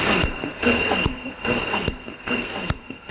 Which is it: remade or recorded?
remade